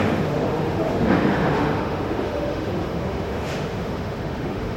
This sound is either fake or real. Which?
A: fake